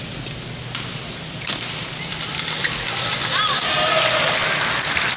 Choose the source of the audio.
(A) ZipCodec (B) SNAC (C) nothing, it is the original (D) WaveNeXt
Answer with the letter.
C